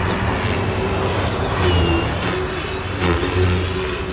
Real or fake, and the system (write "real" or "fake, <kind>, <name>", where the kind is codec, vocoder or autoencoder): real